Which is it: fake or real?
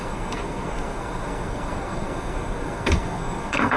fake